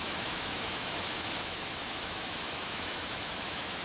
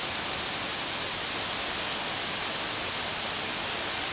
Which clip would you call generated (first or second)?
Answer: first